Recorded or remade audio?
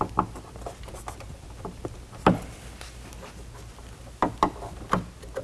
recorded